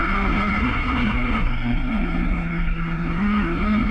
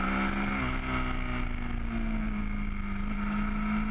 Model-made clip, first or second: first